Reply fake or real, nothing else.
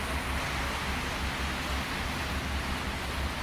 real